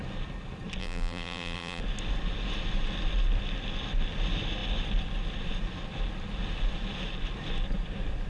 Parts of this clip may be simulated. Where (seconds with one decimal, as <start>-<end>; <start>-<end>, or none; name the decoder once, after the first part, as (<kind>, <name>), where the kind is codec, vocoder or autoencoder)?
0.8-1.8 (vocoder, BigVGAN v2)

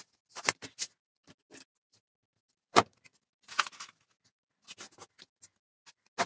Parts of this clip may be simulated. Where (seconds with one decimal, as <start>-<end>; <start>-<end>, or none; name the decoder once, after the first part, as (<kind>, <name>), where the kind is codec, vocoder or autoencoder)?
none

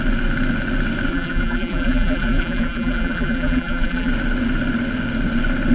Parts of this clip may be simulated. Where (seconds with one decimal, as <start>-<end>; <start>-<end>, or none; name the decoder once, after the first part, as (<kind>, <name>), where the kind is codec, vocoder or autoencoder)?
1.1-4.1 (vocoder, BigVGAN v2)

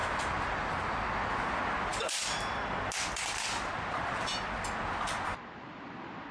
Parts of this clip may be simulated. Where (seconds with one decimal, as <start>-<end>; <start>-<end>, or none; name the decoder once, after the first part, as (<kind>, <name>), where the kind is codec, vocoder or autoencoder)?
none